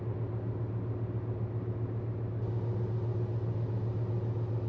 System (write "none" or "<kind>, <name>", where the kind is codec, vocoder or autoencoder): none